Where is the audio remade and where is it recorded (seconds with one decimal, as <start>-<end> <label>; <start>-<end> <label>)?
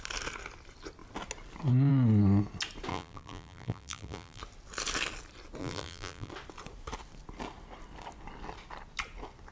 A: 0.0-2.9 recorded; 2.9-4.4 remade; 4.4-5.6 recorded; 5.6-6.3 remade; 6.3-9.5 recorded